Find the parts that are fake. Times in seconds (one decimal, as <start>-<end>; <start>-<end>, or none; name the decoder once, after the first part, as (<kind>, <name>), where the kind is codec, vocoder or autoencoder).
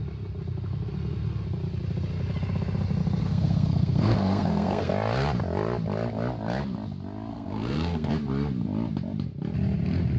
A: 3.2-4.9 (codec, SNAC); 7.3-8.1